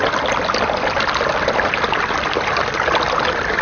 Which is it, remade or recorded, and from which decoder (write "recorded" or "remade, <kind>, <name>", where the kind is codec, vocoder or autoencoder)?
recorded